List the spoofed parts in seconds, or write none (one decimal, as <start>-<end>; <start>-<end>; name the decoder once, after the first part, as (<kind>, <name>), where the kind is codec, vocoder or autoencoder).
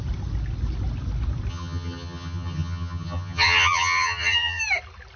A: 1.5-4.6 (vocoder, HiFi-GAN)